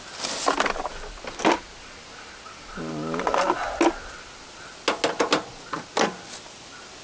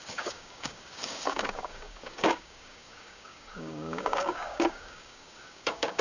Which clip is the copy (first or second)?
second